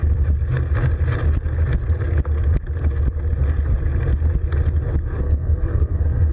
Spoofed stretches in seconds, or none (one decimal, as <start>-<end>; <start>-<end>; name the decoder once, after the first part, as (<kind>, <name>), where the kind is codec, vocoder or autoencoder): 5.2-6.3 (codec, SNAC)

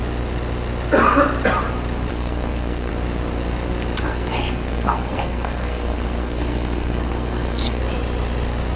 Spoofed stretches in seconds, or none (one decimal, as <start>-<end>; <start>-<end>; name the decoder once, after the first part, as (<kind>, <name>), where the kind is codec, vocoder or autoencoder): 2.1-2.9 (codec, SNAC); 4.1-7.8

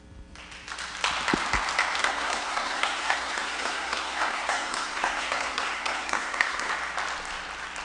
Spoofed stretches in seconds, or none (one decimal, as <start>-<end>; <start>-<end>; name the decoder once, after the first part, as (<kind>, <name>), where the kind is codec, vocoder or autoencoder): 2.0-6.7 (codec, SNAC)

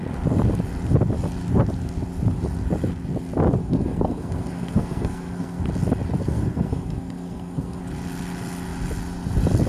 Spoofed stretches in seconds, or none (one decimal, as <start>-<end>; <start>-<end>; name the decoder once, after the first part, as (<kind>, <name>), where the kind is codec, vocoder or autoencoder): 3.6-5.6 (codec, SNAC); 6.2-7.8

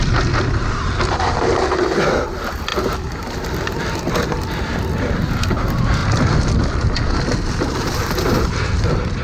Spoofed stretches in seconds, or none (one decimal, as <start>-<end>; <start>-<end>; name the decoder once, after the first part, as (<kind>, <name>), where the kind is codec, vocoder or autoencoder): none

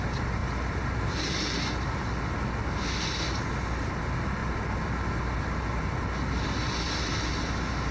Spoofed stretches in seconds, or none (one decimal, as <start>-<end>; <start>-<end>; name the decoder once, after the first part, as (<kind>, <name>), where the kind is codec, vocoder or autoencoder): none

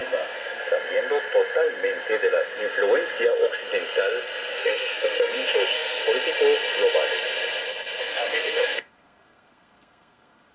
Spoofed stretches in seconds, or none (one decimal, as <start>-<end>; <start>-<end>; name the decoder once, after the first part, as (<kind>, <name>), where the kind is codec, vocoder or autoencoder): 0.0-0.7 (codec, SNAC); 4.5-6.0; 8.0-10.5

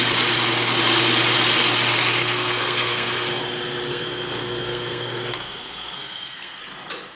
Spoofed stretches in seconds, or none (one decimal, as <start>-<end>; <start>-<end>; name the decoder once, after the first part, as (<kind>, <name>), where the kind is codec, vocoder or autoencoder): 2.2-3.4 (codec, SNAC); 3.9-6.6